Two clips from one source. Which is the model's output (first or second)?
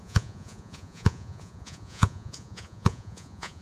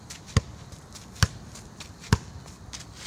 first